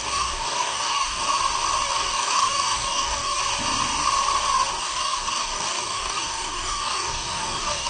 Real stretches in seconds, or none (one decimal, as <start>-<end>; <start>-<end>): 1.4-1.9; 3.4-4.8